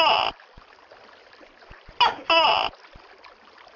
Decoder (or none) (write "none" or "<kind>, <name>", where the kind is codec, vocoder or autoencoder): none